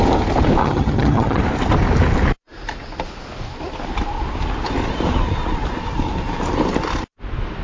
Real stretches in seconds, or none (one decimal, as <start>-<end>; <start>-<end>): 0.0-0.6; 1.4-7.6